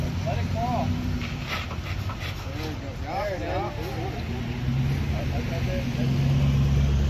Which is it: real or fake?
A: real